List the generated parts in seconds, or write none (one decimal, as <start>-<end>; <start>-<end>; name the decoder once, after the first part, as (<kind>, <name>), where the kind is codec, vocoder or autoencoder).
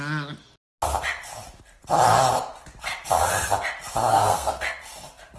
4.1-4.8 (codec, SNAC)